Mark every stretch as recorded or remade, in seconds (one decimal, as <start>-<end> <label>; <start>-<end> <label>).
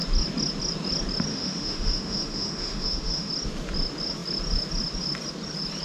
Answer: 0.0-1.3 recorded; 1.3-3.3 remade; 3.3-5.8 recorded